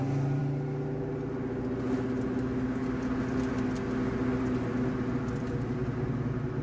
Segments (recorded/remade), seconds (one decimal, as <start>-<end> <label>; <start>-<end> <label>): 0.0-6.6 recorded